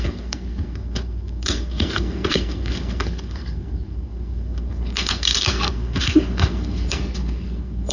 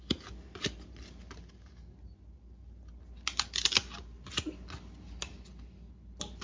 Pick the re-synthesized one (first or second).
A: first